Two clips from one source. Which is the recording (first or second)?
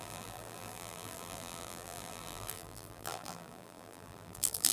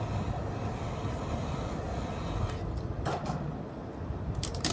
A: second